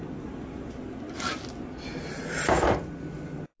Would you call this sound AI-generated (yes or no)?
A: no